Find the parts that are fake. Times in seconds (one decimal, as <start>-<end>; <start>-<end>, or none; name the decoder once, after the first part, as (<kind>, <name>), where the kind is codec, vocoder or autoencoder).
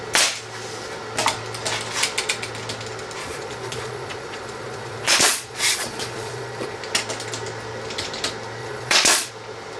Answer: 3.2-6.8 (vocoder, Vocos); 8.6-9.3